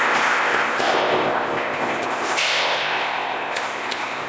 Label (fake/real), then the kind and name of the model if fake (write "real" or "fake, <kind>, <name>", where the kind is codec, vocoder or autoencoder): fake, codec, ZipCodec